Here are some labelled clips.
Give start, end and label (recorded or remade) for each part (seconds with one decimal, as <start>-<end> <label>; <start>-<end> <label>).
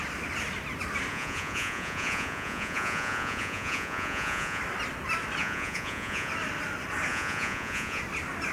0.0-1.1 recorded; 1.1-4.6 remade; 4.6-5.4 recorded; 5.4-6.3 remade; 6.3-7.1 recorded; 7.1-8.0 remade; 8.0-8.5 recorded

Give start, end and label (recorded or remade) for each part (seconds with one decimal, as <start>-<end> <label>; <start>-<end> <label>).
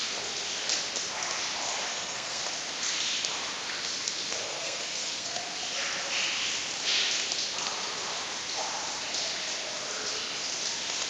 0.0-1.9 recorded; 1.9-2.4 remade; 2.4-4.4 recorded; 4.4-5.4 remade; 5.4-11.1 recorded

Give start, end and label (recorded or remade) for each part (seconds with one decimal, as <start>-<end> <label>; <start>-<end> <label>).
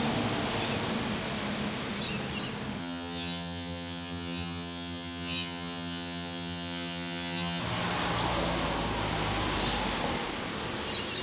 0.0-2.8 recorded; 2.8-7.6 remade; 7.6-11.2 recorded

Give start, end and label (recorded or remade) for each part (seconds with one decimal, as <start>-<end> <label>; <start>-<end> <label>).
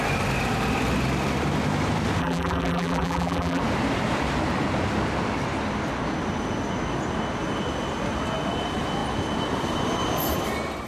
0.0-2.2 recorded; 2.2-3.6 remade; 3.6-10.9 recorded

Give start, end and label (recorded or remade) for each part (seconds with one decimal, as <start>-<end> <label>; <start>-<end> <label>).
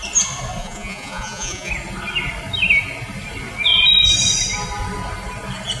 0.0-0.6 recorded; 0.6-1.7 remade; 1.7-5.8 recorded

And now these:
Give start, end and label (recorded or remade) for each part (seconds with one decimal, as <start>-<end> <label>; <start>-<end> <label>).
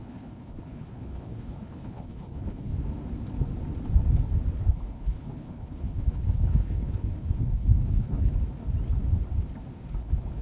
0.0-2.7 remade; 2.7-4.7 recorded; 4.7-8.3 remade; 8.3-9.9 recorded; 9.9-10.4 remade